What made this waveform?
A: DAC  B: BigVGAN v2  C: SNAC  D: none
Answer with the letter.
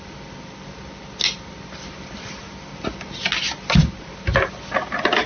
D